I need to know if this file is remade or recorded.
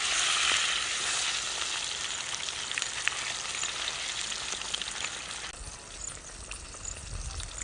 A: recorded